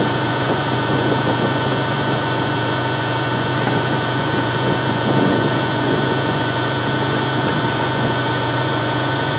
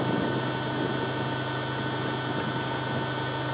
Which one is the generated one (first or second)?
first